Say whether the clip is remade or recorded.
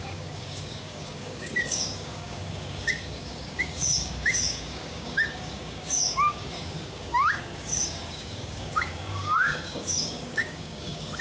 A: remade